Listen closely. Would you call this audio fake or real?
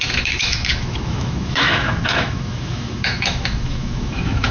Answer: fake